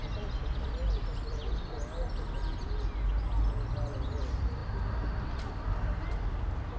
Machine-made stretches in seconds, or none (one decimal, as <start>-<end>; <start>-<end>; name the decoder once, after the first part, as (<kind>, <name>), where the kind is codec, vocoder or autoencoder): none